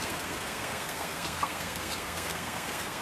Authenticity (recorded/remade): remade